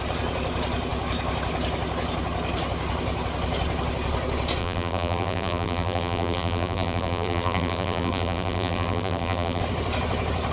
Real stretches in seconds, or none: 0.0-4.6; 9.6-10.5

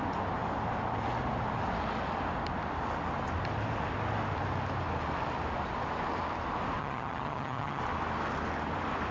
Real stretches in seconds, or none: 0.0-6.8; 7.8-9.1

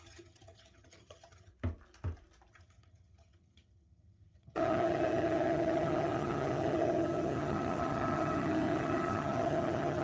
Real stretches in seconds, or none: 1.5-2.5

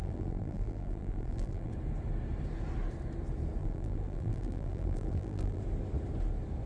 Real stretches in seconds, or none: 1.7-3.6; 5.6-6.7

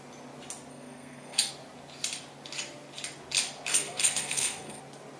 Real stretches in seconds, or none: 0.0-0.7; 1.5-3.7; 4.8-5.2

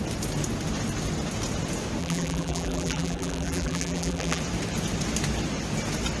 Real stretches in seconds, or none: 0.0-2.0; 4.4-6.2

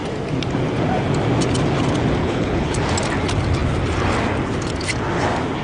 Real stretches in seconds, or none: 0.0-2.2; 2.8-5.6

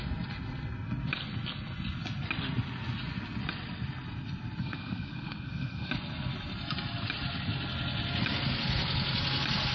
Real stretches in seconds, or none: 0.0-4.6; 5.9-9.7